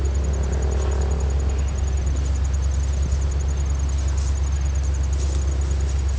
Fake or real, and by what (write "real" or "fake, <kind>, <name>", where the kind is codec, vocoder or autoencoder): real